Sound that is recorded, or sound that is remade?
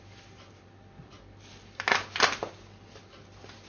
recorded